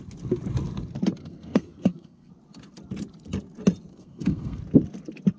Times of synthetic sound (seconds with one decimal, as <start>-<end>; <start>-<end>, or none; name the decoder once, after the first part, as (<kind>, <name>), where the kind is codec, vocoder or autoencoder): 1.2-2.3 (codec, SNAC); 3.9-4.6